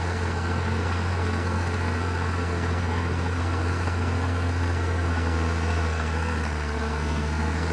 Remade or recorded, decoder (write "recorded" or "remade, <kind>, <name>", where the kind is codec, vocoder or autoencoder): remade, codec, SNAC